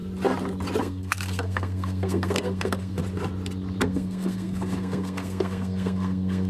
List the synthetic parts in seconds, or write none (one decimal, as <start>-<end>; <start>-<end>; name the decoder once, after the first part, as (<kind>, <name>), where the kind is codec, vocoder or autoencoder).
0.8-3.0 (codec, SNAC); 3.8-6.5